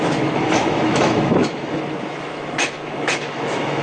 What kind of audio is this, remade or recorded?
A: remade